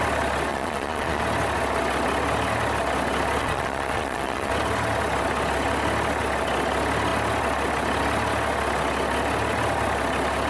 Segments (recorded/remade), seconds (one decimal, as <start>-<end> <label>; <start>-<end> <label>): 0.0-0.5 recorded; 0.5-1.2 remade; 1.2-3.4 recorded; 3.4-4.5 remade; 4.5-10.5 recorded